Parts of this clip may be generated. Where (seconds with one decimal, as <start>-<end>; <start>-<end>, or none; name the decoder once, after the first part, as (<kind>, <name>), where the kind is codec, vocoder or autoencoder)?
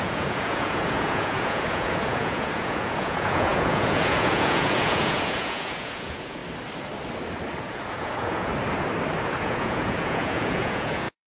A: 0.0-6.4 (vocoder, Vocos); 7.6-8.5; 9.2-11.4